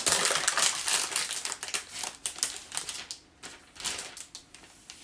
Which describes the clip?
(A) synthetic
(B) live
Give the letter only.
B